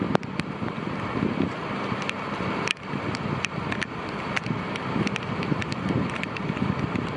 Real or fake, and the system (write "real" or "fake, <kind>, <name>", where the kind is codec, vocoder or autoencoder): fake, vocoder, BigVGAN v2